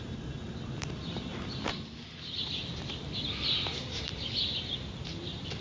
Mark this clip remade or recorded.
remade